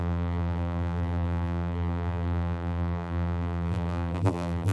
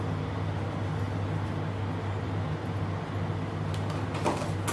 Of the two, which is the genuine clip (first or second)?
second